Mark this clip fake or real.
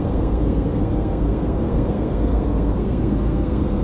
fake